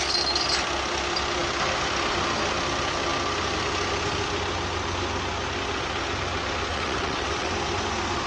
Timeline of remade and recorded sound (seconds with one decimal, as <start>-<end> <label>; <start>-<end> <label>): 0.0-6.7 recorded; 6.7-7.5 remade; 7.5-8.3 recorded